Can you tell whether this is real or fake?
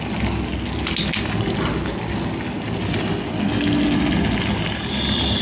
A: real